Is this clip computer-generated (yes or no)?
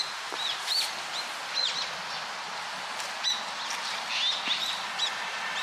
no